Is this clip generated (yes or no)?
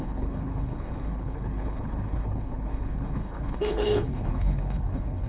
yes